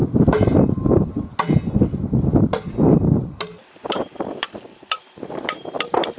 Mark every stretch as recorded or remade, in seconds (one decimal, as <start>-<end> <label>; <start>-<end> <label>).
0.0-3.7 recorded; 3.7-6.2 remade